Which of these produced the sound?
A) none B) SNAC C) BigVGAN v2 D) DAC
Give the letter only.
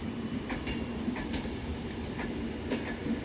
A